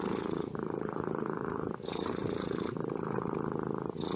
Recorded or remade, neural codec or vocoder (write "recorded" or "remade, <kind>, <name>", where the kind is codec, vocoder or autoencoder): remade, vocoder, BigVGAN v2